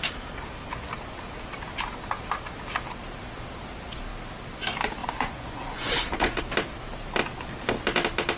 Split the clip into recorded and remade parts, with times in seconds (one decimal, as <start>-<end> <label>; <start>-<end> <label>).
0.0-5.0 recorded; 5.0-6.4 remade; 6.4-8.4 recorded